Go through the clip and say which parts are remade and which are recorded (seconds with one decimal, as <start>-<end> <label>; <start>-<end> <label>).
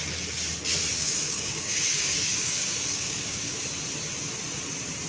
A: 0.0-0.9 recorded; 0.9-3.6 remade; 3.6-5.1 recorded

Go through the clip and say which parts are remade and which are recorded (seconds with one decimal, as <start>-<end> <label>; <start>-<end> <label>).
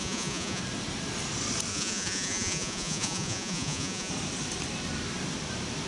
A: 0.0-0.6 remade; 0.6-1.7 recorded; 1.7-4.1 remade; 4.1-5.9 recorded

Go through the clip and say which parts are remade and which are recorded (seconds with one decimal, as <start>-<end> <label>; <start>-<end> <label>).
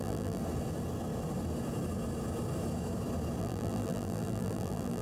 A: 0.0-0.4 remade; 0.4-3.4 recorded; 3.4-5.0 remade